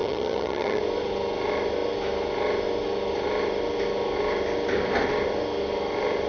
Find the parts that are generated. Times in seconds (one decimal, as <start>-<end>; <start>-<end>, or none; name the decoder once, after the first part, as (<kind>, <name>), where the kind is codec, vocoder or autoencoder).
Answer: 0.0-0.8 (vocoder, HiFi-GAN)